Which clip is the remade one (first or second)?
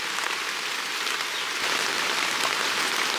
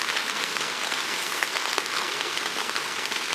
second